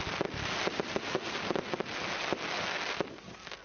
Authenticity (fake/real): real